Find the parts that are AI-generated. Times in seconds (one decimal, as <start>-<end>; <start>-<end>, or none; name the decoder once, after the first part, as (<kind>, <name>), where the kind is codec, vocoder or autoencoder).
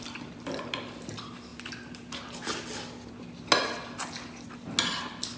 none